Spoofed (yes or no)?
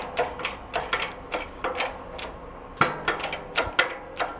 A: no